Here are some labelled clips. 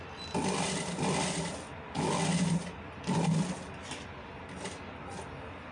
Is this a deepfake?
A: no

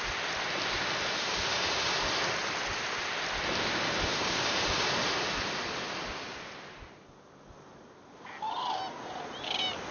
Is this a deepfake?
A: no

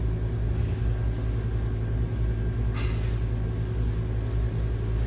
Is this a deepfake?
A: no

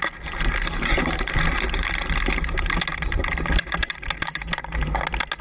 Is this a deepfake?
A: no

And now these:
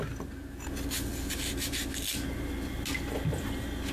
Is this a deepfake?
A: no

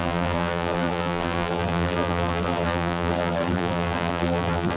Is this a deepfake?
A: yes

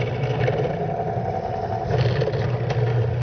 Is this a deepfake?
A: no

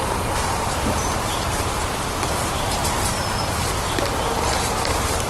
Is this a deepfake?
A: yes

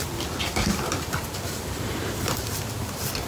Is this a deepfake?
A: yes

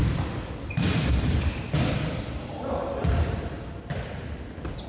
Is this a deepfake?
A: yes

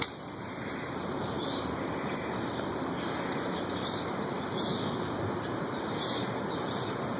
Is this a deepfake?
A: yes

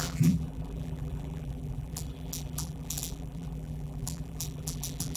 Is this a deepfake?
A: yes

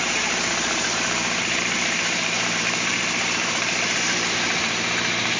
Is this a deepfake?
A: yes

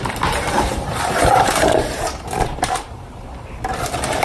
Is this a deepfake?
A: yes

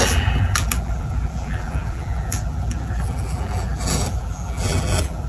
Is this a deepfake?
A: yes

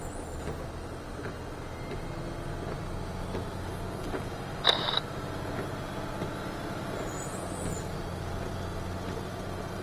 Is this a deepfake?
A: no